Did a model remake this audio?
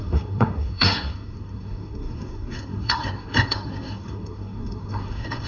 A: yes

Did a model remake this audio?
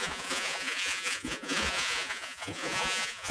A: yes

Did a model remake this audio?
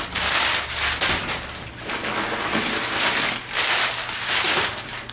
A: no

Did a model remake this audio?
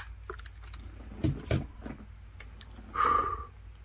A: no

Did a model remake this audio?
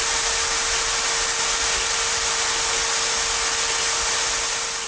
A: no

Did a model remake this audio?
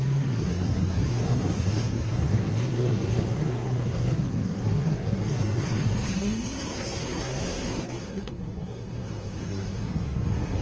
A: yes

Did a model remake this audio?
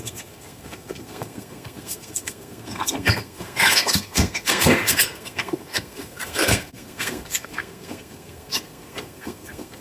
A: yes